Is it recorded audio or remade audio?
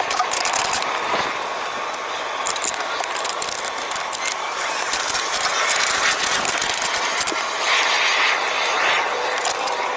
recorded